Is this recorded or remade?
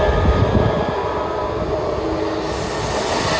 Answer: recorded